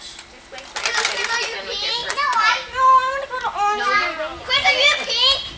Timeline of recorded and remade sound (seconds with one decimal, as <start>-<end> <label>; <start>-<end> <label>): 0.0-5.6 recorded